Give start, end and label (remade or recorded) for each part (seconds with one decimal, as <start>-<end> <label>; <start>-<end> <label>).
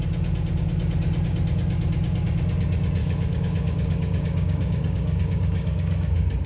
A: 0.0-3.0 recorded; 3.0-6.5 remade